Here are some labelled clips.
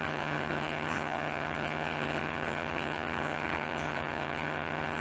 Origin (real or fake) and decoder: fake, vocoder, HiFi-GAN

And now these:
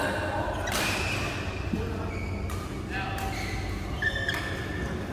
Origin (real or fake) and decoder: real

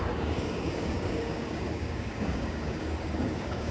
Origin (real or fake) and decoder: fake, codec, DAC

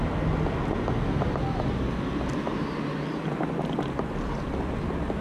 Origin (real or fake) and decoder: real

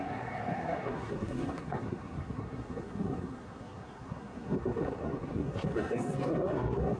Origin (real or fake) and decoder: fake, codec, SNAC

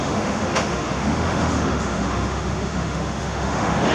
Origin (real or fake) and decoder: fake, autoencoder, DAC-VAE